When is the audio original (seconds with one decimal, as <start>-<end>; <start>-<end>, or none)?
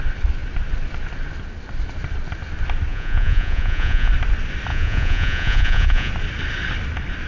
0.0-2.9; 4.1-4.7; 6.1-7.3